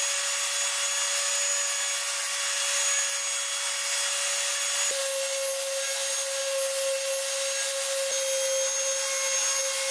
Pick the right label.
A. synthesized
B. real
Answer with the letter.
B